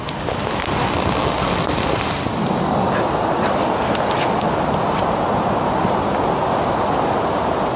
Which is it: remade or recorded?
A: recorded